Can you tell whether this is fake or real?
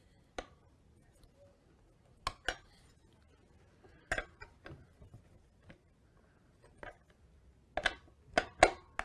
real